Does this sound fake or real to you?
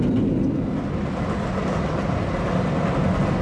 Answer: real